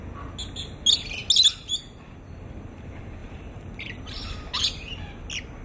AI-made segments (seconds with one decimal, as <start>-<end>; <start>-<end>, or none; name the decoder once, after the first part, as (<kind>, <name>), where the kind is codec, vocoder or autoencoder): 3.2-4.0 (vocoder, BigVGAN v2)